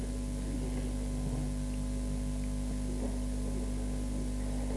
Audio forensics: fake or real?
real